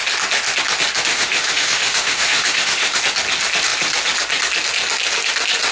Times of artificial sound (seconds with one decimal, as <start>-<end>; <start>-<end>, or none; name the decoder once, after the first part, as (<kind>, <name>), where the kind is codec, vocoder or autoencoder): 1.1-3.0 (autoencoder, DAC-VAE)